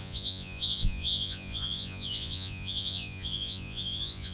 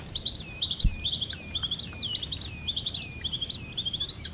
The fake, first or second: first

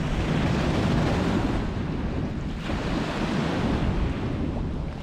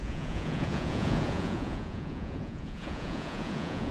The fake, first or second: second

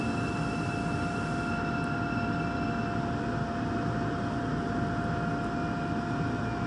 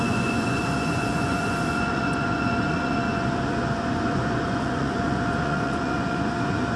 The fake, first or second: second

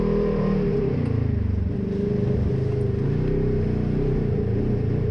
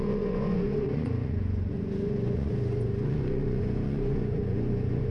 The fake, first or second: second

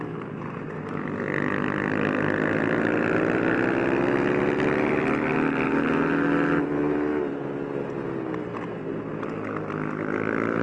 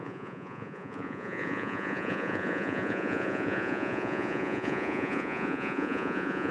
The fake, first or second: second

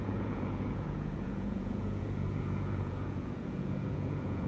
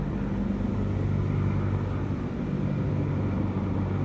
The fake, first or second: first